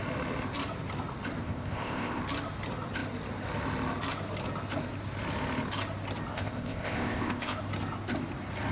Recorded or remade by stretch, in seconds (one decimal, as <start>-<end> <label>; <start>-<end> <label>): 0.0-1.4 recorded; 1.4-2.2 remade; 2.2-6.3 recorded; 6.3-7.6 remade; 7.6-8.7 recorded